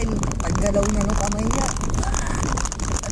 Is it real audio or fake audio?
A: real